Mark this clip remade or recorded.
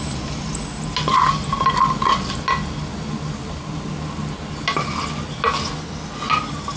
recorded